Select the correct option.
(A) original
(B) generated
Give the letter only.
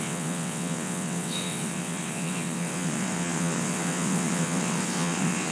B